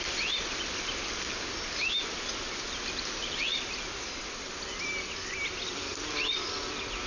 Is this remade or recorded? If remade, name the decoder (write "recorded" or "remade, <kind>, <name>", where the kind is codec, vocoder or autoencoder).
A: recorded